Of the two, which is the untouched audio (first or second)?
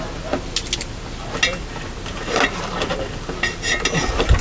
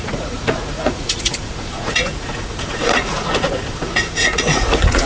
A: first